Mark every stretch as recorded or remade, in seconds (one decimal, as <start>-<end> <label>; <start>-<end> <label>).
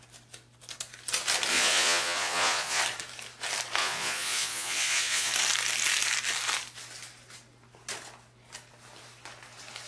0.0-1.5 recorded; 1.5-2.8 remade; 2.8-3.8 recorded; 3.8-5.3 remade; 5.3-9.9 recorded